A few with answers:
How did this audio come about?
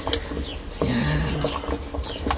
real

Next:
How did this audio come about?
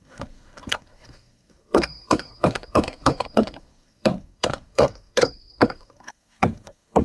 fake